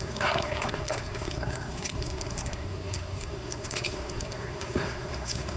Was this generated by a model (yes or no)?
yes